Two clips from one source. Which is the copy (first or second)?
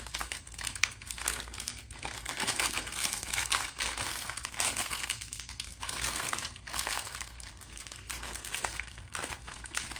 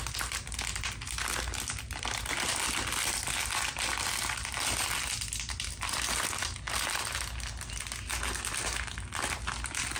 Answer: first